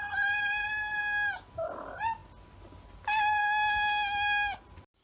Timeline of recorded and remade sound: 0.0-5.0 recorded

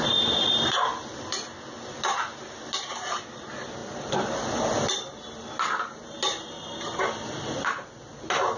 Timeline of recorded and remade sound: 0.0-8.6 recorded

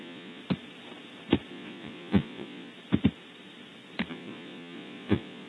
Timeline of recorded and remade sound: 0.0-0.4 remade; 0.4-1.5 recorded; 1.5-2.7 remade; 2.7-4.1 recorded; 4.1-5.5 remade

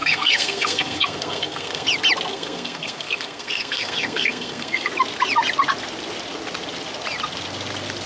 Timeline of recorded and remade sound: 0.0-1.9 remade; 1.9-2.3 recorded; 2.3-4.9 remade; 4.9-8.1 recorded

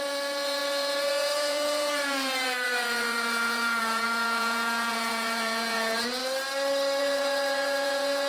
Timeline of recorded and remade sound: 0.0-6.2 remade; 6.2-7.0 recorded; 7.0-8.3 remade

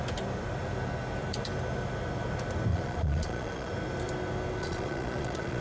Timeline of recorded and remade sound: 0.0-2.7 recorded; 2.7-3.7 remade; 3.7-4.6 recorded; 4.6-5.6 remade

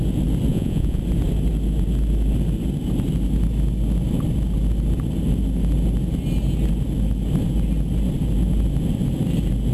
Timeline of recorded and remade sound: 0.0-0.5 recorded; 0.5-1.0 remade; 1.0-9.7 recorded